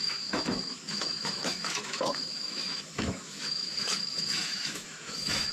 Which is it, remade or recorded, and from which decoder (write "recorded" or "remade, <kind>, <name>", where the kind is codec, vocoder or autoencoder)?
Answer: remade, autoencoder, DAC-VAE